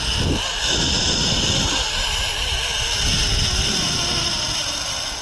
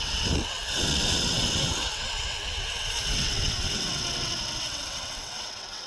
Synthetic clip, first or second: second